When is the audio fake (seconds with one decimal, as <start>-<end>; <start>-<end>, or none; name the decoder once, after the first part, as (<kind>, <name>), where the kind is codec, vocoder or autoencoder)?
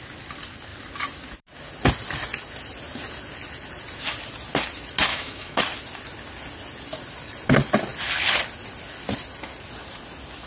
5.1-5.6 (autoencoder, DAC-VAE)